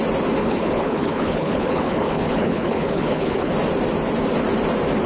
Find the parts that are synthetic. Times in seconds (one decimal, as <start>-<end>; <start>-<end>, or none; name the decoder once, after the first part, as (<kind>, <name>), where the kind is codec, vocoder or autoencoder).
0.4-3.5 (codec, HILCodec)